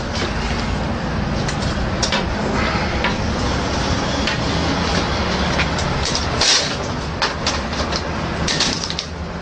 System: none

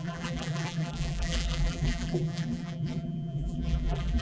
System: vocoder, BigVGAN v2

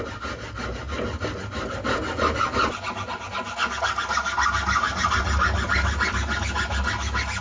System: none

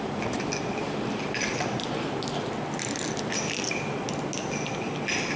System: none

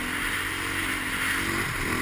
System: none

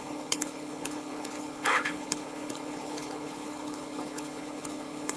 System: codec, HILCodec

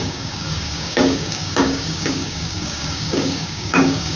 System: codec, DAC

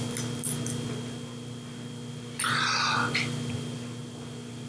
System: none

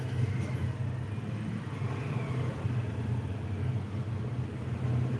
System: none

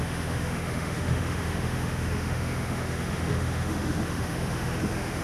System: autoencoder, DAC-VAE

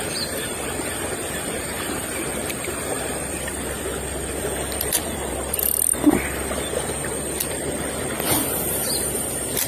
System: vocoder, BigVGAN v2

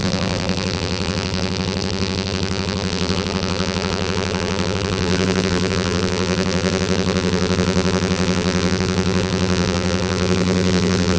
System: vocoder, BigVGAN v2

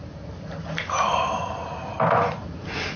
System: vocoder, BigVGAN v2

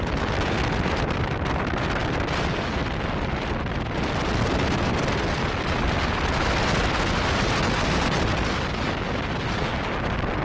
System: none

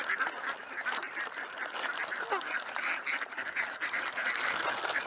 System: none